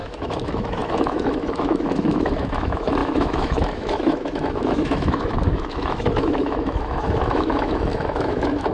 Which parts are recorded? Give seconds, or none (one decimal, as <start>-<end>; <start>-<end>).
none